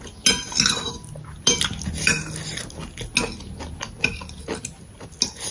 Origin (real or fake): real